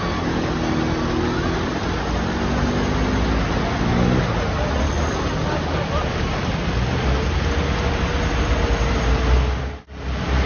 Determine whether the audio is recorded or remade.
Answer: recorded